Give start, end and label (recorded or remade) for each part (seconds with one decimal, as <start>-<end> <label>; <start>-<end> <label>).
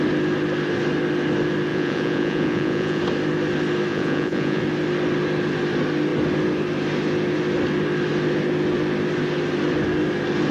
0.0-1.7 recorded; 1.7-3.0 remade; 3.0-3.9 recorded; 3.9-4.6 remade; 4.6-10.5 recorded